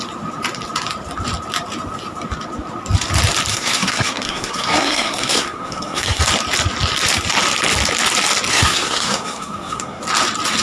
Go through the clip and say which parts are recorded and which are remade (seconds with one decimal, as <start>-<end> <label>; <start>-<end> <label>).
0.0-3.5 recorded; 3.5-6.2 remade; 6.2-8.5 recorded; 8.5-10.0 remade; 10.0-10.6 recorded